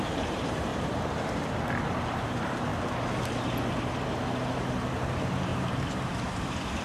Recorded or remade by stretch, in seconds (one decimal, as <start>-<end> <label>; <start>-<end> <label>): 0.0-0.7 remade; 0.7-2.0 recorded; 2.0-2.7 remade; 2.7-4.5 recorded; 4.5-6.8 remade